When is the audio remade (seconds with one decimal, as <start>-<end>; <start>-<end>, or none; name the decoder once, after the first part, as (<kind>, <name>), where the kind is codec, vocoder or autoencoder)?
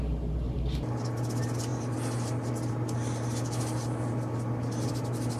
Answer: none